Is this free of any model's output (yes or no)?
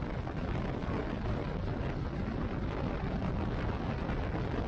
yes